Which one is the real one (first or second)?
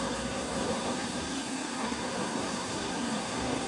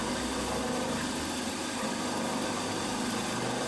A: second